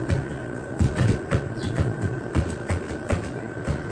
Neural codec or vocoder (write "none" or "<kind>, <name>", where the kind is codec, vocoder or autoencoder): vocoder, Vocos